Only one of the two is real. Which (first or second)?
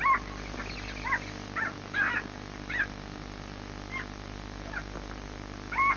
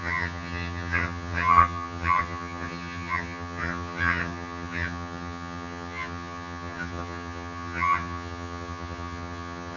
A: first